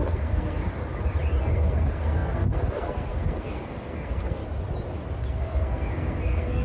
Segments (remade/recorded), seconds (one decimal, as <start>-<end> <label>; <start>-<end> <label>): 0.0-0.8 remade; 0.8-1.4 recorded; 1.4-4.4 remade; 4.4-5.3 recorded; 5.3-6.6 remade